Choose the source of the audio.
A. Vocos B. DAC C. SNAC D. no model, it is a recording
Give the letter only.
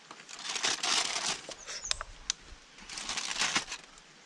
D